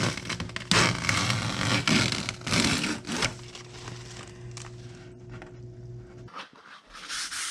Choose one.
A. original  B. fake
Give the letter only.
A